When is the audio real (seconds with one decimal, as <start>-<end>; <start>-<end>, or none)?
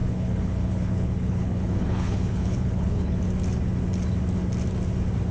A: 3.2-5.3